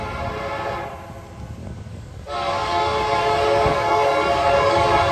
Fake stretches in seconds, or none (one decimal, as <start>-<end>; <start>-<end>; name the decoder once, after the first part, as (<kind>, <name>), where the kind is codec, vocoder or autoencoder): 1.6-5.1 (codec, DAC)